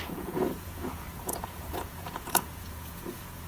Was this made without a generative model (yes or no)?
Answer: no